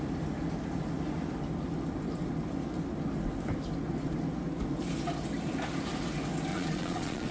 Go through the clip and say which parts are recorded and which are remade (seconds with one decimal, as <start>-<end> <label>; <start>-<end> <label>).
0.0-6.5 recorded; 6.5-7.3 remade